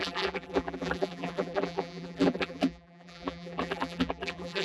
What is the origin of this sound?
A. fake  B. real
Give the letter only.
A